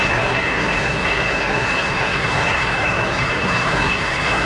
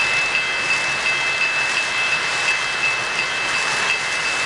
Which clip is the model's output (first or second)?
first